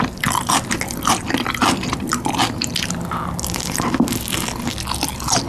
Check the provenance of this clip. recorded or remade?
recorded